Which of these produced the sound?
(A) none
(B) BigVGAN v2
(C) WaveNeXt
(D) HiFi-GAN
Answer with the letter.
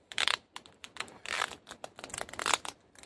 B